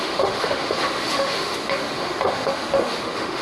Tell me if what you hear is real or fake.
fake